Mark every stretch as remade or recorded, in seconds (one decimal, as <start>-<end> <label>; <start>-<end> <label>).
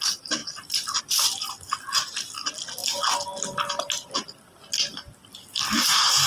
0.0-6.3 recorded